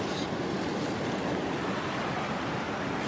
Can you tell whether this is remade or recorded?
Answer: recorded